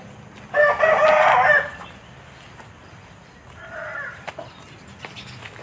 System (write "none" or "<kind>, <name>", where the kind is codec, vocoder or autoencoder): none